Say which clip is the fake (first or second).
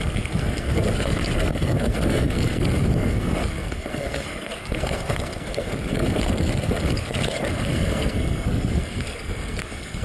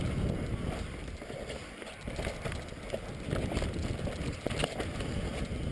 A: first